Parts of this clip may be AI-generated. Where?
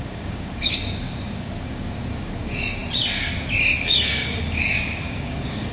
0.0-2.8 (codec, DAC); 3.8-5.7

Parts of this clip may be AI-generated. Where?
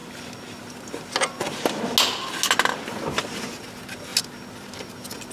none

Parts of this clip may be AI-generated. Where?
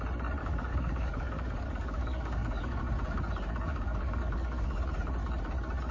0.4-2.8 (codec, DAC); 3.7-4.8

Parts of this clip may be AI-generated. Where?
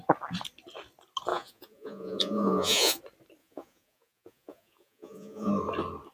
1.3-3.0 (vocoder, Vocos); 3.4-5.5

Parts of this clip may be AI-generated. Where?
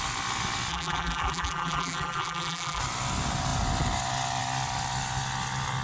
0.7-2.8 (vocoder, BigVGAN v2)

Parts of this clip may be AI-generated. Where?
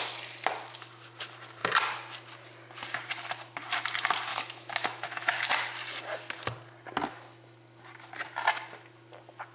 4.3-5.5 (autoencoder, DAC-VAE)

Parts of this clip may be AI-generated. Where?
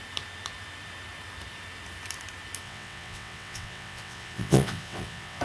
2.6-5.4 (vocoder, WaveNeXt)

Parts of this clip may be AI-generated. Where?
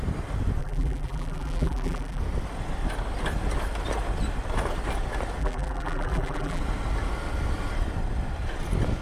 0.6-2.2 (vocoder, BigVGAN v2); 5.4-6.6